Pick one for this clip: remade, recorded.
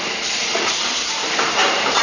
recorded